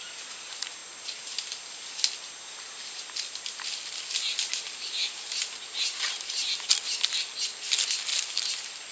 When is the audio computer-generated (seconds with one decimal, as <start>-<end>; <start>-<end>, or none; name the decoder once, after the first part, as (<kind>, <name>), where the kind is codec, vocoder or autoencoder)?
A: none